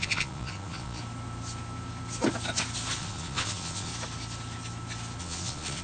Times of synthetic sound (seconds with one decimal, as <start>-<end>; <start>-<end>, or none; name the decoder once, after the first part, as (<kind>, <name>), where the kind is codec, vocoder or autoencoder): 0.0-1.0 (vocoder, Vocos); 3.0-3.9; 5.2-5.8